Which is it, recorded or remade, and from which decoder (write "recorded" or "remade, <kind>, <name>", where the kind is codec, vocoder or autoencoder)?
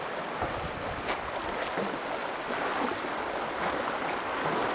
recorded